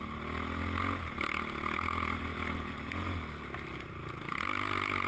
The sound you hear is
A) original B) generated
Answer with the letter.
A